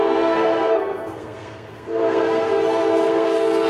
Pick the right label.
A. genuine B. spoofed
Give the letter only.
B